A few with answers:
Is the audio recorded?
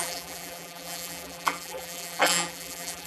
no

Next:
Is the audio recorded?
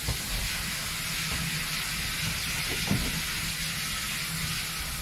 yes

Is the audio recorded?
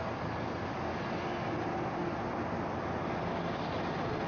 yes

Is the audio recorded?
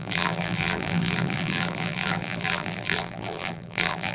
no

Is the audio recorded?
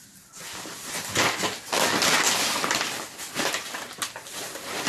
yes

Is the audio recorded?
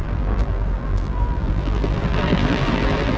no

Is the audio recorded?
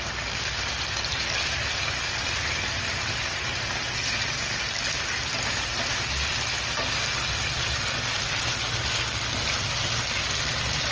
yes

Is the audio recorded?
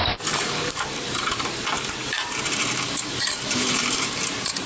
no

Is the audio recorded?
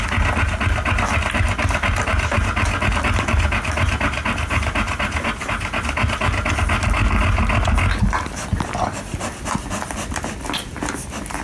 yes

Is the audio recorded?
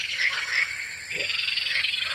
no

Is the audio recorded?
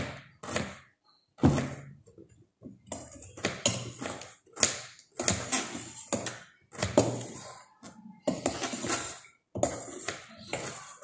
yes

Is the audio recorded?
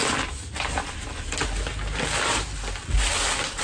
yes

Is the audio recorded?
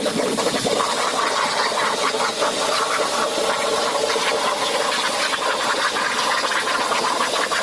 yes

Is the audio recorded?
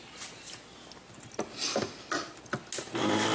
yes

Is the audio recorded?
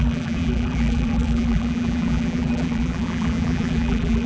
no